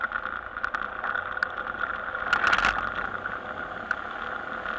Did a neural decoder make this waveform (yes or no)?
no